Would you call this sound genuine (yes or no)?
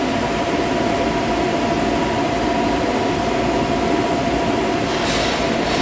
yes